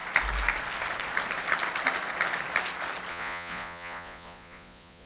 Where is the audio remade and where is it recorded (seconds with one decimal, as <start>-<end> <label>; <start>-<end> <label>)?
0.0-3.1 recorded; 3.1-5.1 remade